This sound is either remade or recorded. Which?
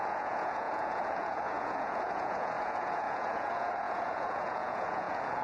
remade